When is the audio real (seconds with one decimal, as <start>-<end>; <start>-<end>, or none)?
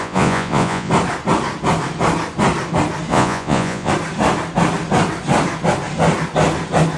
0.9-3.1; 3.9-7.0